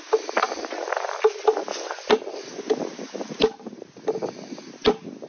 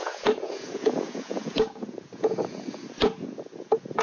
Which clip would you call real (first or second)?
first